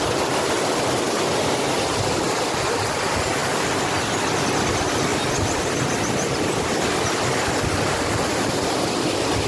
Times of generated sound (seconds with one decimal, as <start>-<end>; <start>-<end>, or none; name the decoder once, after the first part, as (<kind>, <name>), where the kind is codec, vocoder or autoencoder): 3.4-4.4 (vocoder, BigVGAN v2); 5.1-9.5